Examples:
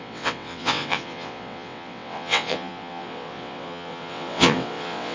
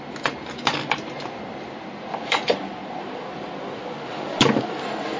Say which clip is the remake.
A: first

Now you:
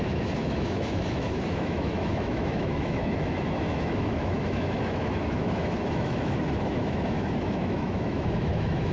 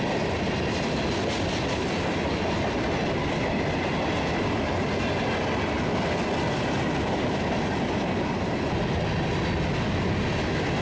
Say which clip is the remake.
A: first